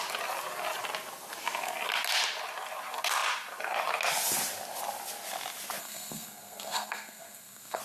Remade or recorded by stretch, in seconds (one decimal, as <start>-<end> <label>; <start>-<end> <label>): 0.0-5.8 recorded; 5.8-7.8 remade